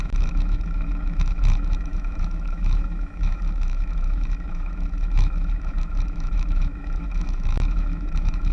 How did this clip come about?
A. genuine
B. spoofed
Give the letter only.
B